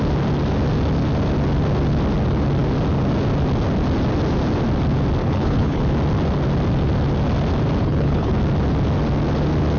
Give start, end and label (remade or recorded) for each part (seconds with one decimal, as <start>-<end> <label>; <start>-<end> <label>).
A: 0.0-5.2 recorded; 5.2-5.8 remade; 5.8-7.8 recorded; 7.8-8.3 remade; 8.3-9.8 recorded

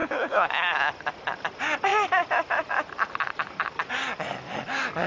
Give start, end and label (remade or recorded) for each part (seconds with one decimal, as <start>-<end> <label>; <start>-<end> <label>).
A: 0.0-0.5 remade; 0.5-5.1 recorded

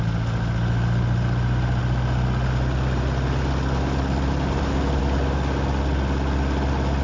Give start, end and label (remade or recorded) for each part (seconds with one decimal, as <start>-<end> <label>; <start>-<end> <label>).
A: 0.0-7.0 recorded

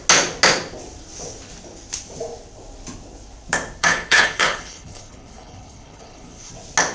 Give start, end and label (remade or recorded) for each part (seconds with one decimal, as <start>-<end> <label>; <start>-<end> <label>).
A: 0.0-3.8 recorded; 3.8-6.5 remade; 6.5-6.9 recorded

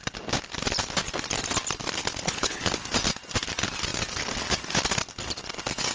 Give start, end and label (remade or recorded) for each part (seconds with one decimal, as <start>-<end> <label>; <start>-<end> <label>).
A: 0.0-2.0 recorded; 2.0-2.7 remade; 2.7-5.9 recorded

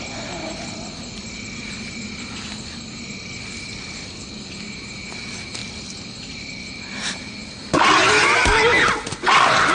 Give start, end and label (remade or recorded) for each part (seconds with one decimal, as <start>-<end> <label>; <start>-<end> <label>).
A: 0.0-9.7 recorded